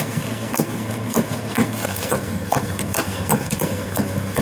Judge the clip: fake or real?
fake